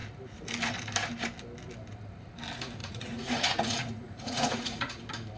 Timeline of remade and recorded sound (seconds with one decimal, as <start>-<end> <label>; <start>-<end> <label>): 0.0-2.8 recorded; 2.8-5.0 remade; 5.0-5.4 recorded